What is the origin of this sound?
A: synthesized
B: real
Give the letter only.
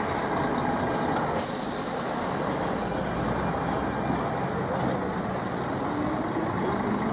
B